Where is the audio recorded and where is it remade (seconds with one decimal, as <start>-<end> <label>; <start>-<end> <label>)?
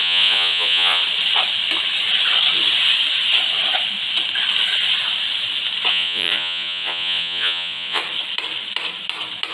0.0-1.0 remade; 1.0-5.9 recorded; 5.9-8.0 remade; 8.0-9.5 recorded